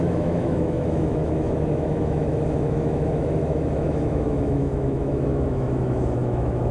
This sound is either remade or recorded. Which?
remade